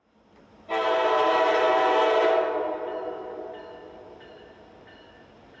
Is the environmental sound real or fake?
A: real